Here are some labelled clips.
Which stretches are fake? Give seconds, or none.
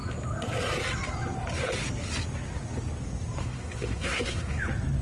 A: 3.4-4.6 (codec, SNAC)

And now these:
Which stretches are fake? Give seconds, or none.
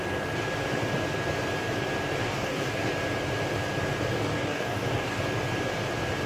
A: 2.2-2.9 (codec, DAC); 4.1-5.2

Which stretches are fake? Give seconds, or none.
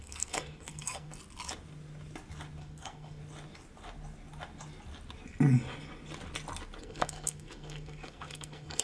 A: 0.0-1.1 (codec, SNAC); 2.6-3.2; 6.8-8.8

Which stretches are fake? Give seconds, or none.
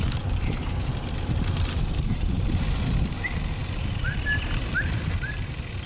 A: none